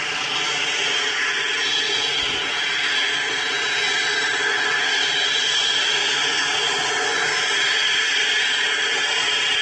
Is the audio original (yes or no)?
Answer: yes